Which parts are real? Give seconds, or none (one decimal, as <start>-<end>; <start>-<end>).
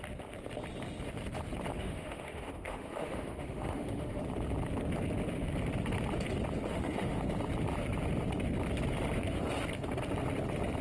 0.0-1.7; 4.2-6.7; 7.2-10.8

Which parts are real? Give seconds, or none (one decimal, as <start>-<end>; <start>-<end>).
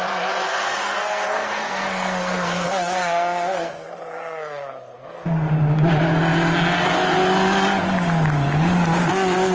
0.0-0.5; 5.5-9.5